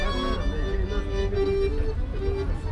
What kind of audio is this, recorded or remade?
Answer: recorded